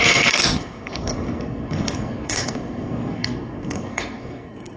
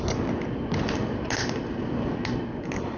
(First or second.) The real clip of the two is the second